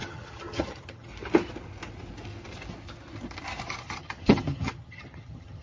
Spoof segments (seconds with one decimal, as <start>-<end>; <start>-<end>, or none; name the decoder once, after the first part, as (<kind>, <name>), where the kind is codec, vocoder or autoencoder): 0.0-1.1 (vocoder, HiFi-GAN); 3.6-5.6